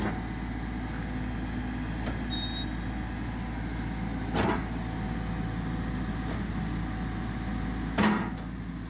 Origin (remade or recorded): recorded